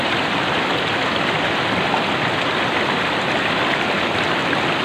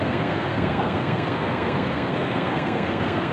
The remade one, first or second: second